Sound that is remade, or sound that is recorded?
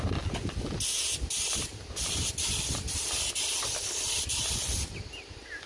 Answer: recorded